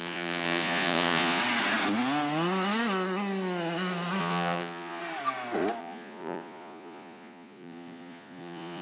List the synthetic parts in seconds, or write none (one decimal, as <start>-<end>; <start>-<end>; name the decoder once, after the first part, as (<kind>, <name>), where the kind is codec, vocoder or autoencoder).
0.0-1.4 (vocoder, Vocos); 4.2-5.0; 5.8-8.8

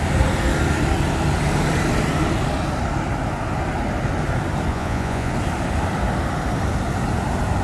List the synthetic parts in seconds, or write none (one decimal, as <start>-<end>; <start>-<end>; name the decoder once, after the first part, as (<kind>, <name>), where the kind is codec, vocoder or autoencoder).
4.7-5.3 (vocoder, Vocos)